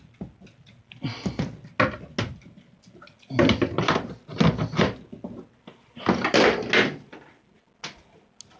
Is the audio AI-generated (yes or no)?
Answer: no